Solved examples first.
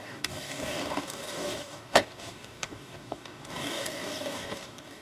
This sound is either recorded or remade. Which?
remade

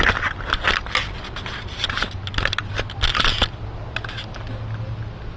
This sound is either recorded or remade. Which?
recorded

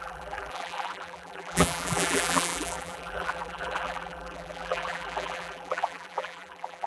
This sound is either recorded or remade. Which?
remade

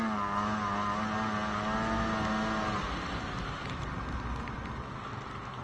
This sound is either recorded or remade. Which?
recorded